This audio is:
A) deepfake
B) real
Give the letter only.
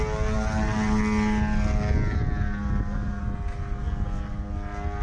B